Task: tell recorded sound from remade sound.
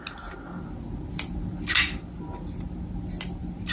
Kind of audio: recorded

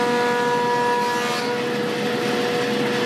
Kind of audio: recorded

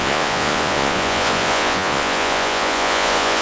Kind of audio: remade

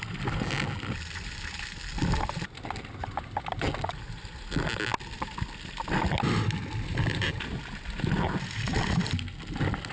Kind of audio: recorded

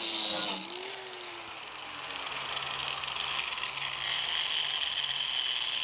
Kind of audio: recorded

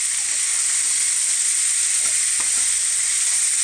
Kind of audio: recorded